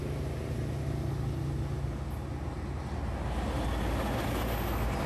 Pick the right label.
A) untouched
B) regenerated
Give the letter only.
A